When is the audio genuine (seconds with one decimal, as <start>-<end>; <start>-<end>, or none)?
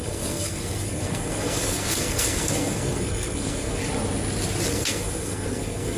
3.8-4.7